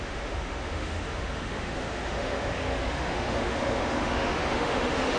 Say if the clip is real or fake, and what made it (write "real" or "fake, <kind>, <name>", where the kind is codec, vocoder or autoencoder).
fake, autoencoder, DAC-VAE